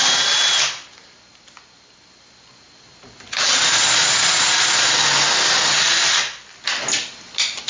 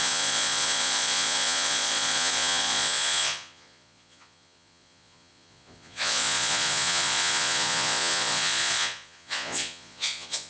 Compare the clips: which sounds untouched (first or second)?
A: first